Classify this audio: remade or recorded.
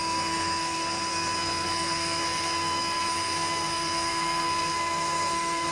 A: remade